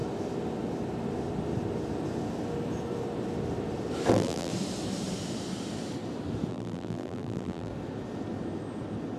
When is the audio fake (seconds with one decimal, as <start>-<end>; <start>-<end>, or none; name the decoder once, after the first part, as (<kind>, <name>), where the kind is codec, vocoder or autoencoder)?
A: 4.1-4.5 (vocoder, BigVGAN v2); 6.5-7.7